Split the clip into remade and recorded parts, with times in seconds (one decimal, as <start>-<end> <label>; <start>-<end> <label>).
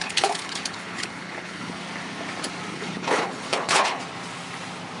0.0-1.8 remade; 1.8-2.7 recorded; 2.7-4.0 remade; 4.0-5.0 recorded